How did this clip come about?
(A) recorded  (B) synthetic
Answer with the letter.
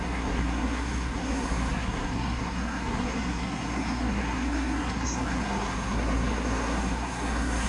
B